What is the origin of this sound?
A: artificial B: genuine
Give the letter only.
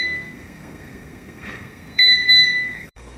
A